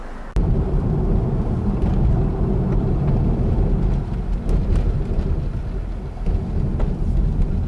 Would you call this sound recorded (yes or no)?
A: yes